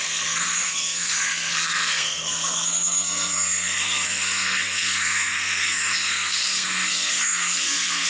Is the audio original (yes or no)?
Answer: no